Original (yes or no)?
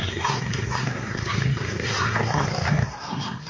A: no